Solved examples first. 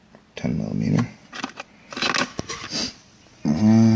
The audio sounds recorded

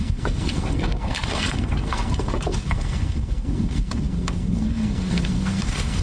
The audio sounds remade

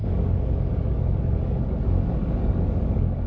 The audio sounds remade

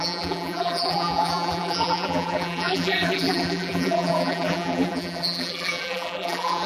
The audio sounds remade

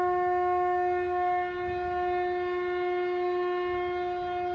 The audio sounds recorded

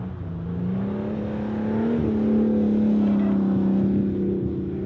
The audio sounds recorded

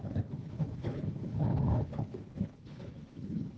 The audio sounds remade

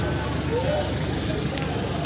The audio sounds recorded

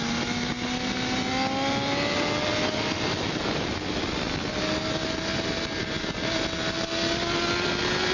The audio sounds recorded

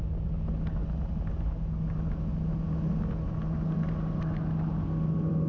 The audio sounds recorded